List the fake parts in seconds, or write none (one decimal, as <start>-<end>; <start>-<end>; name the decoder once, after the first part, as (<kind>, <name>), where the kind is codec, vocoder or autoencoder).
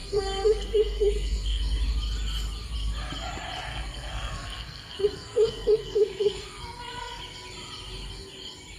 0.0-1.6 (codec, SNAC); 3.7-7.2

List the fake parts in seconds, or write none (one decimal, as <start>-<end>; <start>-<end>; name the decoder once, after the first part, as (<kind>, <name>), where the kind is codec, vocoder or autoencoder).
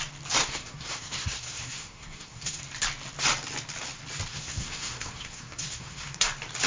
0.4-2.6 (codec, SNAC); 4.3-6.3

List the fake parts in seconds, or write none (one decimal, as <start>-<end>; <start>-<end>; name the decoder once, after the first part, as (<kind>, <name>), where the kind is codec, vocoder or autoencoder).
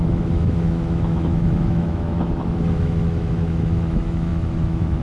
0.0-5.0 (autoencoder, DAC-VAE)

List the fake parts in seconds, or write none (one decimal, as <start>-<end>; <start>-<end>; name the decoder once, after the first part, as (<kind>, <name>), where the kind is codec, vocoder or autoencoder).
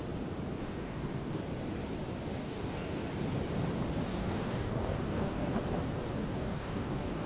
0.6-1.4 (codec, DAC); 2.4-3.0; 4.1-5.5; 6.2-7.3